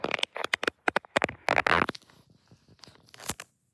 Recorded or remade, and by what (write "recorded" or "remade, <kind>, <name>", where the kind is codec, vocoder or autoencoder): recorded